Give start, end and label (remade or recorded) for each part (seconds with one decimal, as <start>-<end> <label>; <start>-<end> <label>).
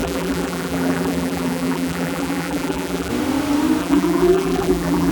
0.0-3.1 remade; 3.1-3.8 recorded; 3.8-5.1 remade